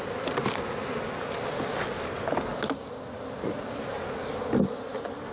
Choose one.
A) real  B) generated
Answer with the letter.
A